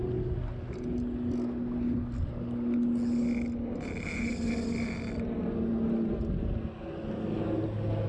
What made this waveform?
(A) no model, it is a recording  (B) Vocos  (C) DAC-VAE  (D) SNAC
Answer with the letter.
A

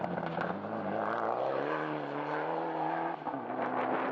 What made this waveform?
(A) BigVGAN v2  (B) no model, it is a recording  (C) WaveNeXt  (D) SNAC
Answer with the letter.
B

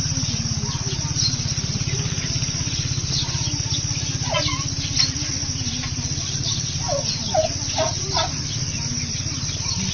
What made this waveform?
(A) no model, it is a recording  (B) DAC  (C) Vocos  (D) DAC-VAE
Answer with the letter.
A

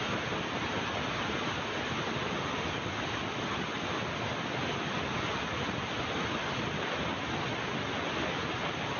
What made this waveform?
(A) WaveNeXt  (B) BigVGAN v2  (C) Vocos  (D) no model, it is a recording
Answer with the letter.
D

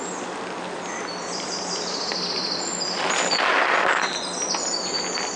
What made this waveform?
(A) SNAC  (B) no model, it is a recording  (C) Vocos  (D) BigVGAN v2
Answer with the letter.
B